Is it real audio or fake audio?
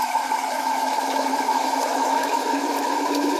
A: fake